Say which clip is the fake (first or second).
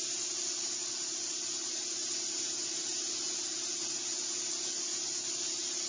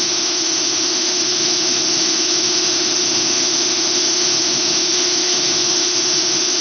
second